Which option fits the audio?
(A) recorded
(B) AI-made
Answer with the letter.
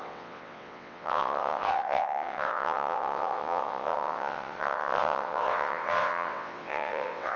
B